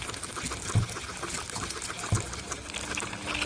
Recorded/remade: recorded